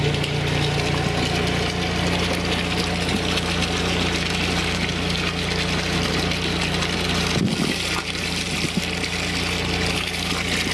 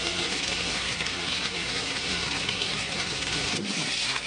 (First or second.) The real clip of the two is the first